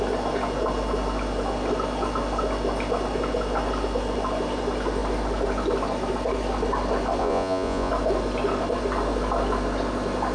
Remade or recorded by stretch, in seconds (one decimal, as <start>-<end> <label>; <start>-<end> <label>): 0.0-7.2 recorded; 7.2-7.9 remade; 7.9-10.3 recorded